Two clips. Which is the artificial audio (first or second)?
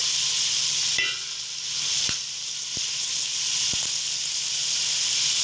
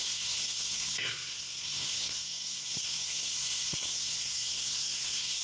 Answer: second